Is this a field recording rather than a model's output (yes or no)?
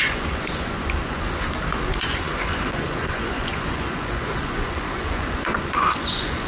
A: no